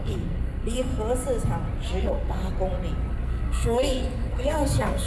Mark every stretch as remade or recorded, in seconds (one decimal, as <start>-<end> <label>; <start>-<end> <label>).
0.0-0.9 remade; 0.9-2.0 recorded; 2.0-2.4 remade; 2.4-3.1 recorded; 3.1-5.1 remade